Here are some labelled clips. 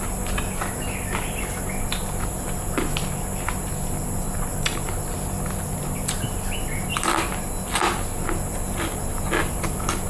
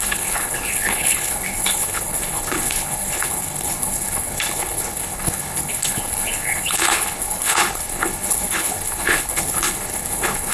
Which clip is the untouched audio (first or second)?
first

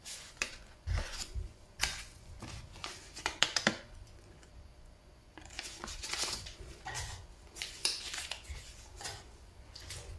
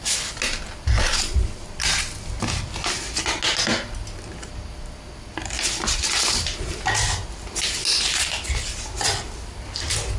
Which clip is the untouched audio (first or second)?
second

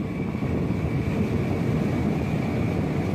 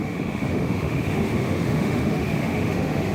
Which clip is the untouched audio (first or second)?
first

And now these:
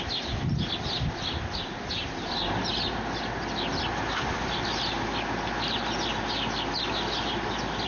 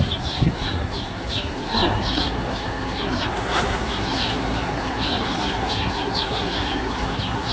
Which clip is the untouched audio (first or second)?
first